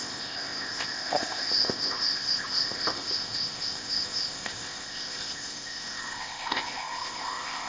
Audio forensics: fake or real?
fake